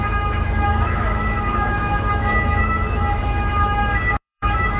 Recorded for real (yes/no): no